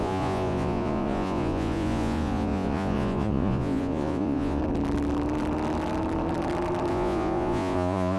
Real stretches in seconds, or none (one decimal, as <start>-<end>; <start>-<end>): 4.6-6.9